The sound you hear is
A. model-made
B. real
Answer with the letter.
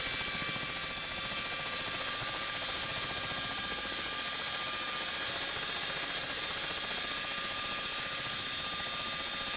B